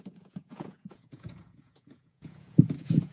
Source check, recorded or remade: remade